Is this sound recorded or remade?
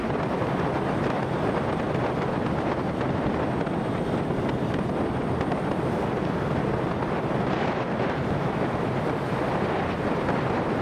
recorded